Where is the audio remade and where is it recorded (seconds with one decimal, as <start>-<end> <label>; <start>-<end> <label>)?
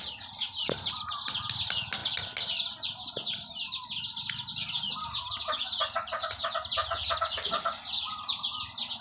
0.0-9.0 recorded